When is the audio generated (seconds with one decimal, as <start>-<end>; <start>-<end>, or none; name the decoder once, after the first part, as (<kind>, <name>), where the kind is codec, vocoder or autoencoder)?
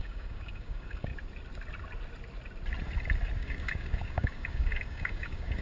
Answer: 0.0-1.1 (codec, DAC); 3.4-5.6